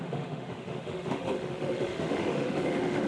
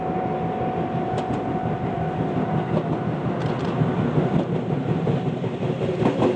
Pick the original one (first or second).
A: second